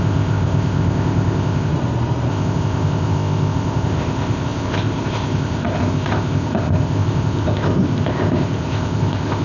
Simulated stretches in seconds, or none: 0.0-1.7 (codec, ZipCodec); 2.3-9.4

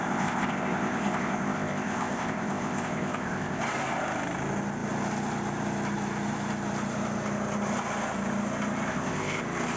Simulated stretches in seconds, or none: 0.0-3.6 (codec, ZipCodec); 8.9-9.4

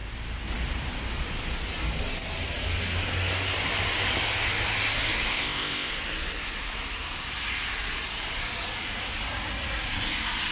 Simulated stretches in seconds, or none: 5.3-5.9 (codec, ZipCodec)

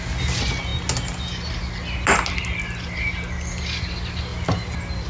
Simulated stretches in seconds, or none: none

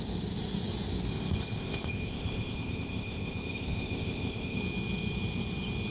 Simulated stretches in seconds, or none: 1.1-4.6 (codec, ZipCodec)